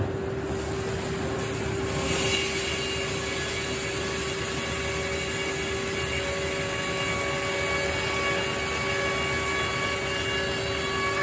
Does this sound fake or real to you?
real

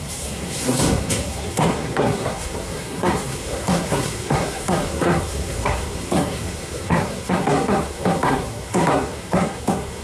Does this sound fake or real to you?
fake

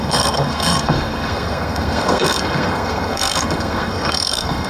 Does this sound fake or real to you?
fake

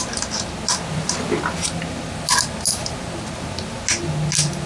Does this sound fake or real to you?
real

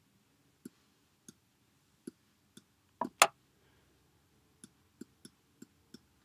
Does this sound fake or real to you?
real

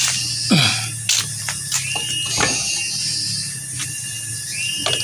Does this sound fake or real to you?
real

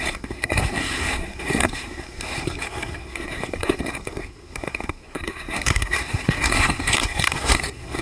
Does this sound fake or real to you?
fake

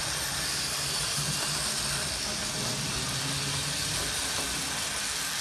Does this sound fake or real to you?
real